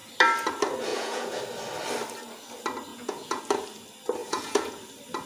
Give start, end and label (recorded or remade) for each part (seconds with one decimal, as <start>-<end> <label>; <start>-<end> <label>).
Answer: 0.0-0.9 recorded; 0.9-1.4 remade; 1.4-2.9 recorded; 2.9-3.4 remade; 3.4-4.2 recorded; 4.2-4.8 remade; 4.8-5.3 recorded